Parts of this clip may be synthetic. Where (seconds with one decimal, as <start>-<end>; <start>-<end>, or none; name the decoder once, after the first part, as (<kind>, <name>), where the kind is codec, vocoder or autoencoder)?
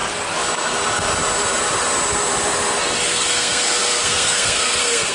3.1-5.1 (codec, SNAC)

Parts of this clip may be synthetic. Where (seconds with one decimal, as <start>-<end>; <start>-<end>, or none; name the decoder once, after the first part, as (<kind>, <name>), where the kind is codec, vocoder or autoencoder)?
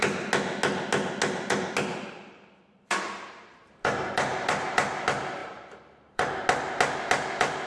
1.9-4.7 (vocoder, BigVGAN v2); 5.4-6.3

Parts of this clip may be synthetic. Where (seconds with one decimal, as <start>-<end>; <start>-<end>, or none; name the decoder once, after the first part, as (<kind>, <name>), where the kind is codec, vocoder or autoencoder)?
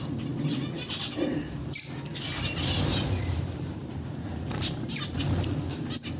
2.9-5.2 (vocoder, BigVGAN v2)